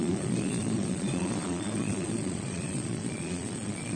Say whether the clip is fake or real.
fake